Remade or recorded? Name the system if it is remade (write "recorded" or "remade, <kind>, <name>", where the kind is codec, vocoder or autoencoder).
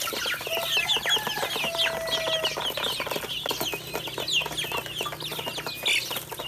recorded